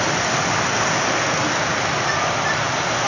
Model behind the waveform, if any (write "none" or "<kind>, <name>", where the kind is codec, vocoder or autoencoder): none